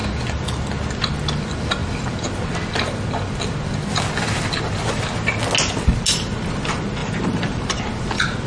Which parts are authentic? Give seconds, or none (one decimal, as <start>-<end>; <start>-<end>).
0.0-7.0; 7.8-8.5